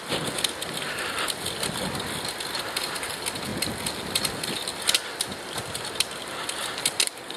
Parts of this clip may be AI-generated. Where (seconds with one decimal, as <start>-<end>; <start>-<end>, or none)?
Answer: none